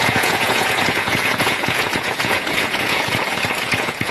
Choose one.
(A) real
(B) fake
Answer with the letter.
B